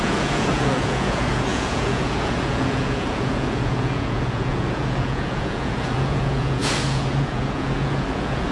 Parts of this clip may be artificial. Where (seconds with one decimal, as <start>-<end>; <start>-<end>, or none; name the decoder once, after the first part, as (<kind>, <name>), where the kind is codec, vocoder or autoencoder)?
0.0-8.5 (vocoder, Vocos)